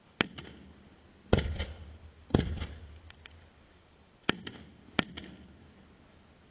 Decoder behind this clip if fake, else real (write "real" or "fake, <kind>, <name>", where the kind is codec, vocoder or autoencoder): real